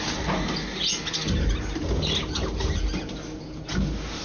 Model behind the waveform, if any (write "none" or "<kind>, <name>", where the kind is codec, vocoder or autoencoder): none